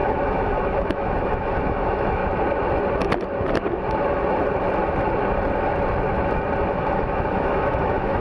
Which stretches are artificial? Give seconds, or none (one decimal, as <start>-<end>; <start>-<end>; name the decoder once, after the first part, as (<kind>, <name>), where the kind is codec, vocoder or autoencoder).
0.0-2.2 (autoencoder, DAC-VAE); 6.7-8.2